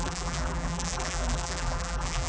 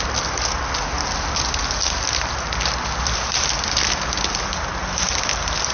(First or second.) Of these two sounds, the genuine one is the second